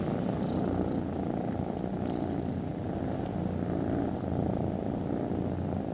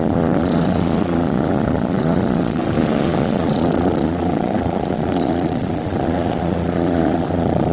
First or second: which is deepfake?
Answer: second